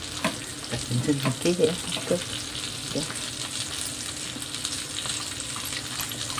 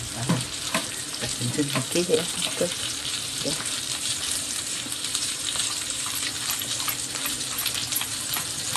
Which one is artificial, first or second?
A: second